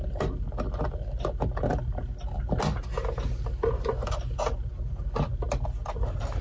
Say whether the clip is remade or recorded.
recorded